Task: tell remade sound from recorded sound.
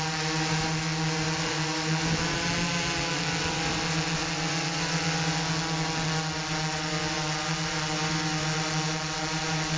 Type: recorded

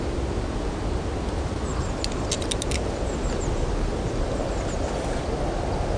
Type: recorded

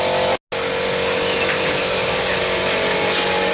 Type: recorded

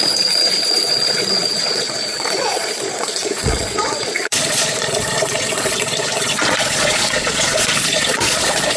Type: remade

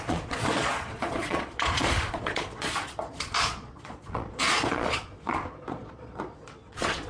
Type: remade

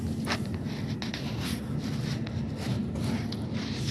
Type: recorded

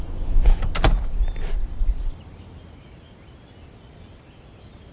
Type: recorded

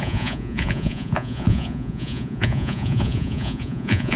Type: remade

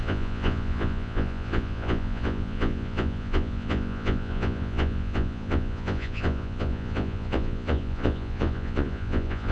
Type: remade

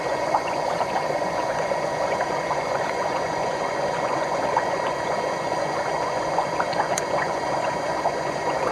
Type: remade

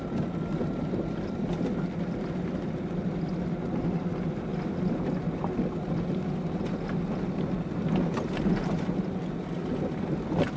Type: recorded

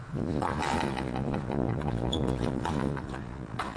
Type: remade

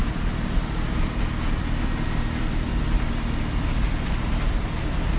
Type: recorded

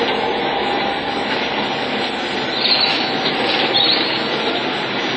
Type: recorded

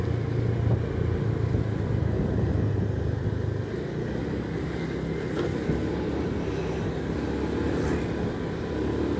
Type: recorded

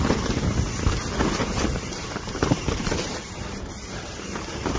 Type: recorded